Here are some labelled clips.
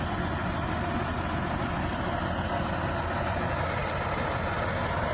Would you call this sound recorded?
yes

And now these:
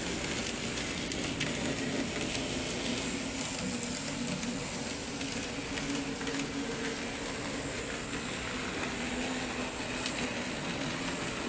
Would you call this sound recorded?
yes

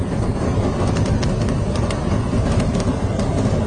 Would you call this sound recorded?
yes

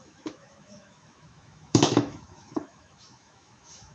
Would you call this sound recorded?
no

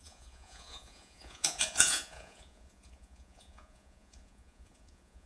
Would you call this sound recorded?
no